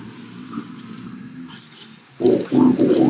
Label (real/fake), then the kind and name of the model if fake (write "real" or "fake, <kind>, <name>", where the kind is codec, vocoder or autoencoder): real